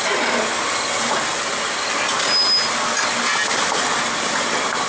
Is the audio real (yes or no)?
yes